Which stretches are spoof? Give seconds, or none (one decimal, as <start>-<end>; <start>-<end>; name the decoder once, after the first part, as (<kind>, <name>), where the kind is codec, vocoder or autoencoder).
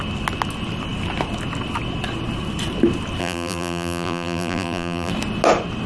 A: 3.2-5.1 (vocoder, BigVGAN v2)